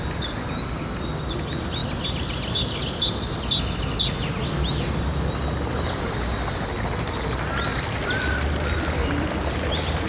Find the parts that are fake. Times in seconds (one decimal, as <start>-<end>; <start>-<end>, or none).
none